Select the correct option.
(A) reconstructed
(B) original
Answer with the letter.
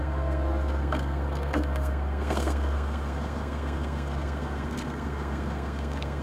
A